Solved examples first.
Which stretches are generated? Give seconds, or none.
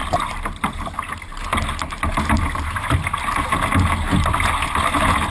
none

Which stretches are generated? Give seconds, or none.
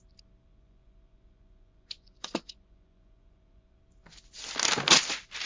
0.5-3.8 (vocoder, Vocos)